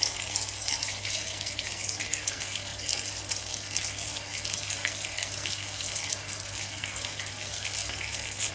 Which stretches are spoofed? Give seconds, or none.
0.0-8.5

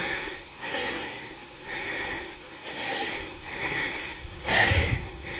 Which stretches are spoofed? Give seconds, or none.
0.0-5.4

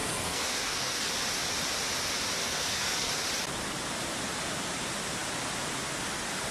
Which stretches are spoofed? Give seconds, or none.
0.0-1.1; 2.4-3.1

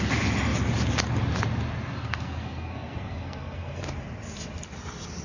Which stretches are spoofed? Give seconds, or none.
2.0-3.8